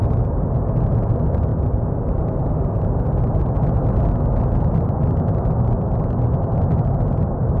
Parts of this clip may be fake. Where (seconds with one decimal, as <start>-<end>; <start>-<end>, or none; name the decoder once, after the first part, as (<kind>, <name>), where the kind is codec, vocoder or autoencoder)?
none